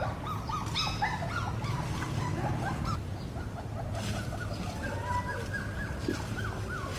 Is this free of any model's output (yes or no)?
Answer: yes